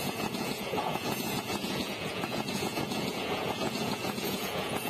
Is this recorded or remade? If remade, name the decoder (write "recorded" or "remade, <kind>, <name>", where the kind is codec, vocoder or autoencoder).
remade, vocoder, Vocos